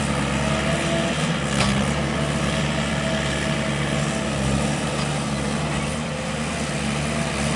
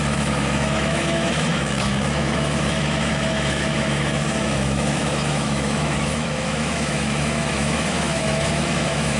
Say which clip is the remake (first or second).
second